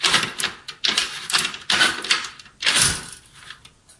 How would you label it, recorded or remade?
recorded